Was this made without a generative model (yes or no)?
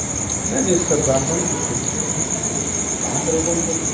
yes